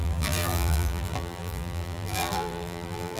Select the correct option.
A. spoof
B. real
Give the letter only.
A